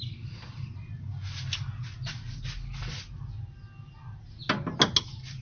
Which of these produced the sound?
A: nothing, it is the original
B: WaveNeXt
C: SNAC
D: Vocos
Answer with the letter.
A